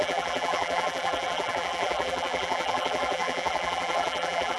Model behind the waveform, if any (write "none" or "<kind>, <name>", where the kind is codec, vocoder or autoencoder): vocoder, BigVGAN v2